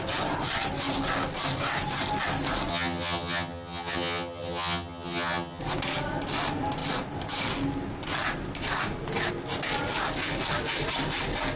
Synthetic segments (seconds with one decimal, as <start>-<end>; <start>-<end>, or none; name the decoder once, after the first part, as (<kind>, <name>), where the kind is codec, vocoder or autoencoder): 2.7-5.6 (vocoder, HiFi-GAN)